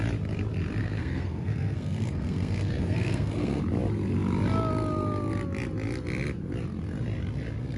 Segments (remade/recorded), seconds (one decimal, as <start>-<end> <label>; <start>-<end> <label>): 0.0-0.8 recorded; 0.8-3.6 remade; 3.6-7.8 recorded